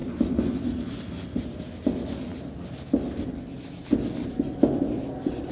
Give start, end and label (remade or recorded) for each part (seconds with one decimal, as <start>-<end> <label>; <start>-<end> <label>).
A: 0.0-5.5 recorded

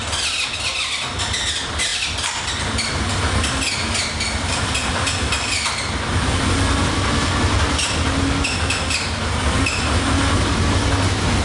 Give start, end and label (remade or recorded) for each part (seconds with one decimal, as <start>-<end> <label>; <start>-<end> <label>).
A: 0.0-11.4 recorded

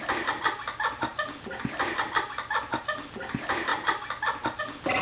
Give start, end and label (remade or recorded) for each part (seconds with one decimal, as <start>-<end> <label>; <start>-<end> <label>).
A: 0.0-5.0 recorded

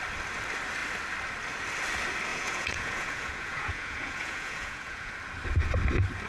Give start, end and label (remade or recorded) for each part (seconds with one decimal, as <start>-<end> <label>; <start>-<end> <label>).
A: 0.0-2.3 recorded; 2.3-5.1 remade; 5.1-6.3 recorded

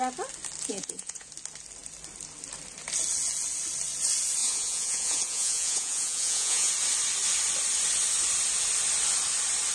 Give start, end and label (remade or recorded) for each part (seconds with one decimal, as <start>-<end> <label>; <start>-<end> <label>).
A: 0.0-0.7 recorded; 0.7-1.3 remade; 1.3-4.4 recorded; 4.4-6.7 remade; 6.7-9.7 recorded